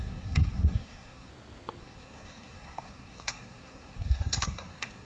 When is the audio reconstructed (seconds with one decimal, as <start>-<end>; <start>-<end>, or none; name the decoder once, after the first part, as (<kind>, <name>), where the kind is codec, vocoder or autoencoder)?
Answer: 0.0-1.3 (codec, SNAC); 1.8-5.0